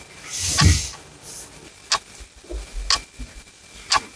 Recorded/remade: recorded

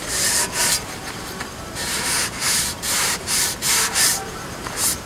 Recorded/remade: remade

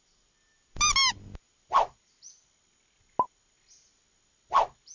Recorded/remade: recorded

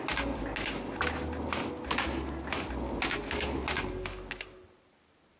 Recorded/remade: recorded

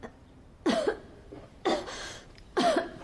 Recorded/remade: remade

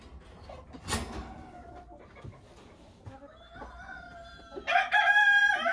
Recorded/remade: recorded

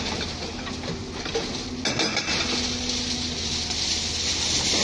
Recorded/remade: recorded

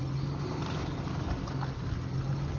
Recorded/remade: recorded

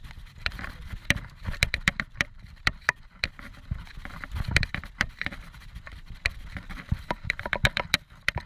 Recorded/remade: remade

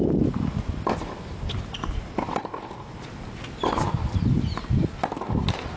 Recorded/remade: recorded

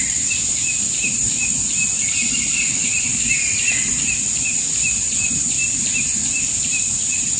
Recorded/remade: remade